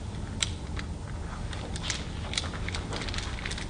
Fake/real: real